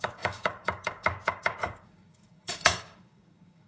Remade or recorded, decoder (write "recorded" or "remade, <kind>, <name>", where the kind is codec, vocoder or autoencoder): remade, codec, DAC